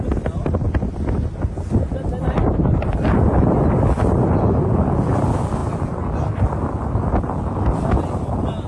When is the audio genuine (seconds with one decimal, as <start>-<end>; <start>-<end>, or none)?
0.0-8.7